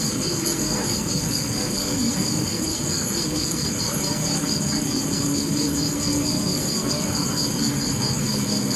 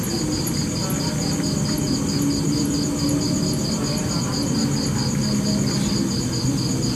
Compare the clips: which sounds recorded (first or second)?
second